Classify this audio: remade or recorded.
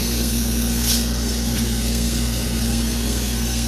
remade